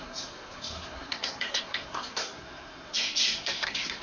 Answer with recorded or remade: remade